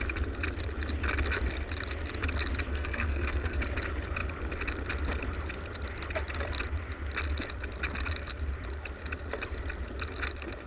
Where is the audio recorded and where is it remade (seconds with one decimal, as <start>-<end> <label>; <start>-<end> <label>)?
0.0-2.7 recorded; 2.7-3.6 remade; 3.6-10.7 recorded